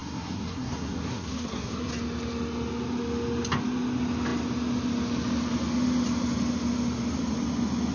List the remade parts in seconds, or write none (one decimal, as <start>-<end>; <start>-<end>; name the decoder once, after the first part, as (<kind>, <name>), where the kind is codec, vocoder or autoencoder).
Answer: 0.0-1.9 (codec, SNAC)